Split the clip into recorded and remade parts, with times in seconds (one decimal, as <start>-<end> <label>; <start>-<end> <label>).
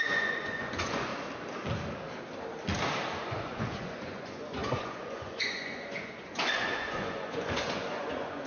0.0-1.1 remade; 1.1-3.2 recorded; 3.2-8.5 remade